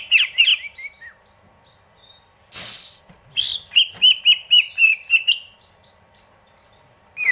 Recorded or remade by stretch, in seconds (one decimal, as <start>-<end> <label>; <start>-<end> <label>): 0.0-3.5 remade; 3.5-4.5 recorded; 4.5-7.3 remade